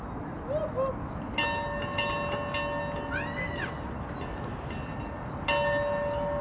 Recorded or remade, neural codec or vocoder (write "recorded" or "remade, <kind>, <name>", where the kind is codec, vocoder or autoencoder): recorded